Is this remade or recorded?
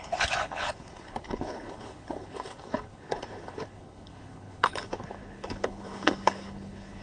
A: remade